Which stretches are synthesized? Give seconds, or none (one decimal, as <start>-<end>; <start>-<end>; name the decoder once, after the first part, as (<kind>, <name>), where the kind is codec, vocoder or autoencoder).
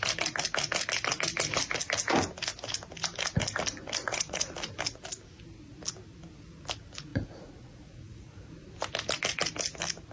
4.0-4.5 (vocoder, Vocos); 7.1-8.7